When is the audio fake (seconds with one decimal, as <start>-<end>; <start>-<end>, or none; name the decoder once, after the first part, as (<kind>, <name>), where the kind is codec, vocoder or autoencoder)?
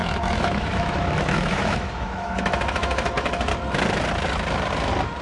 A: 0.0-3.5 (autoencoder, DAC-VAE)